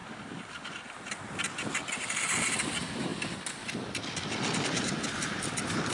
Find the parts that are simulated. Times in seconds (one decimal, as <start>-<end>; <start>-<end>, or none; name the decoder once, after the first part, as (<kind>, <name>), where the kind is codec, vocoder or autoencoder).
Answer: 0.0-0.7 (codec, DAC)